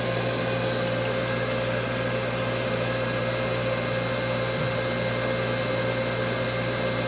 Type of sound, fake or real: real